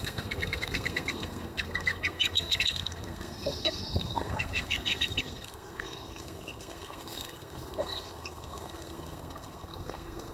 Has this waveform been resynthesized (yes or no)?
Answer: yes